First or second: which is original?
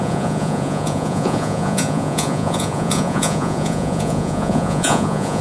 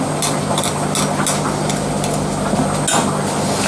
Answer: second